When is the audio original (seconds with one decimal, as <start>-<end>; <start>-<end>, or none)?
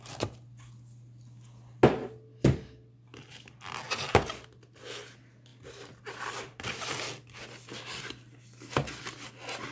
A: 0.0-9.7